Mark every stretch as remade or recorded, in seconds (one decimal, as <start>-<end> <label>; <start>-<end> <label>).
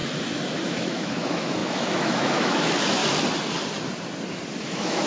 0.0-0.7 recorded; 0.7-3.0 remade; 3.0-4.6 recorded; 4.6-5.1 remade